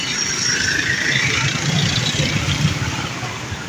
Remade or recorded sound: recorded